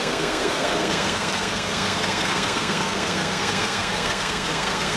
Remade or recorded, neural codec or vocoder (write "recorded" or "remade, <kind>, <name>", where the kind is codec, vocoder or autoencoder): remade, codec, SNAC